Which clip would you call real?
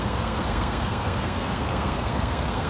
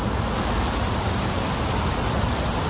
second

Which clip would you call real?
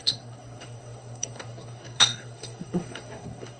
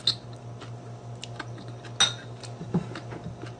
second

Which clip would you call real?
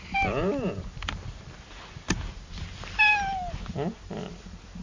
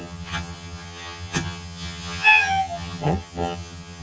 first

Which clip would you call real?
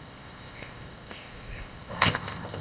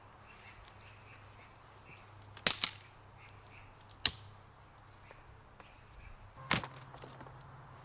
second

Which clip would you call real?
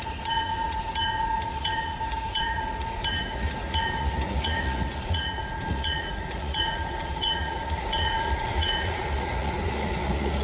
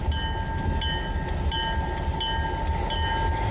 second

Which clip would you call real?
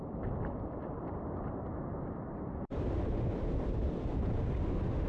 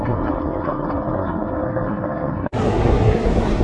first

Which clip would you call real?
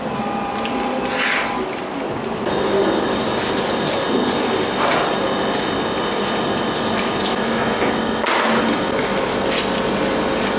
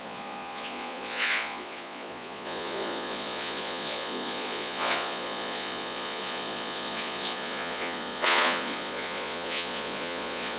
first